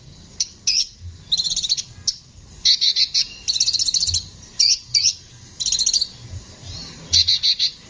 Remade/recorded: recorded